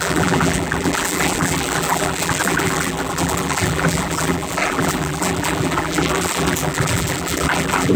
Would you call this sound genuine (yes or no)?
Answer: no